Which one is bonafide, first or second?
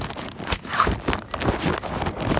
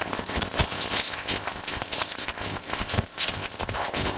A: first